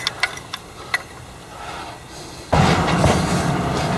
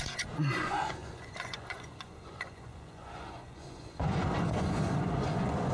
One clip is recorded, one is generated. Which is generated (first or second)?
second